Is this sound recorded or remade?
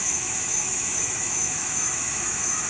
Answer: remade